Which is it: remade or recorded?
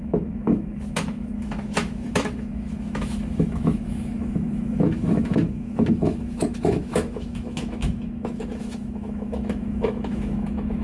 remade